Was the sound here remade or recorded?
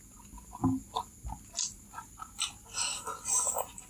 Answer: recorded